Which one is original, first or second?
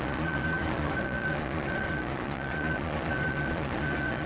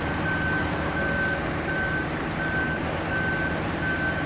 second